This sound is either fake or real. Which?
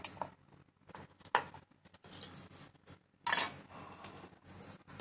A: real